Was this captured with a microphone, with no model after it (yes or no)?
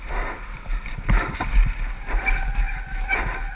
yes